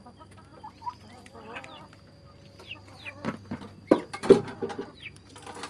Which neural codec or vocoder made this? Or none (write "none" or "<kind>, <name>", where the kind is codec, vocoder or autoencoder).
vocoder, BigVGAN v2